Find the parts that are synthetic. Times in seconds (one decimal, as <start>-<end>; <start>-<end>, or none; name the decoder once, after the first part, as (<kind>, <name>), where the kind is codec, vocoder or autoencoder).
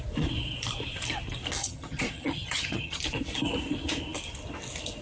1.6-3.0 (vocoder, HiFi-GAN)